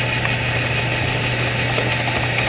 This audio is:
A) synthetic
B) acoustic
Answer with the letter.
B